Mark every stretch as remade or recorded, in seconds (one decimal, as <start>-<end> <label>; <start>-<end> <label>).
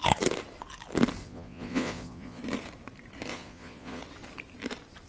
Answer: 0.0-1.2 recorded; 1.2-2.4 remade; 2.4-3.3 recorded; 3.3-4.0 remade; 4.0-5.1 recorded